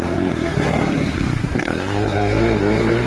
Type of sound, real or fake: fake